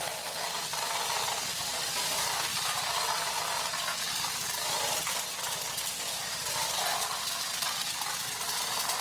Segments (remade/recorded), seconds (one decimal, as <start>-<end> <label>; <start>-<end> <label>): 0.0-9.0 recorded